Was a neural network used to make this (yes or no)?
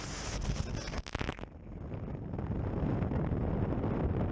no